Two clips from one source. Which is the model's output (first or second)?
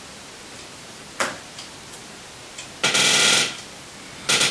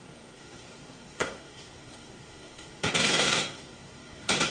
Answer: second